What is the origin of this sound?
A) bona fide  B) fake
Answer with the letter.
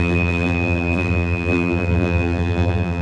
B